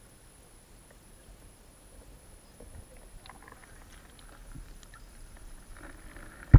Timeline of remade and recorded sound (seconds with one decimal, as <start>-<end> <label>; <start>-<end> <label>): 0.0-4.4 recorded; 4.4-5.4 remade; 5.4-6.6 recorded